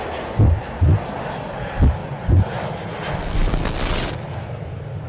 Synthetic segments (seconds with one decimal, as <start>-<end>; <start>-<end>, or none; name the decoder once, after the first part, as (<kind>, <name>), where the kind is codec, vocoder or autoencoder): 2.0-2.5 (vocoder, Vocos)